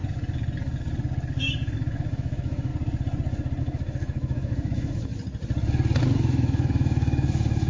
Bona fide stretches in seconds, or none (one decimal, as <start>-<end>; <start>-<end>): 0.0-1.4; 2.7-3.6; 5.1-6.0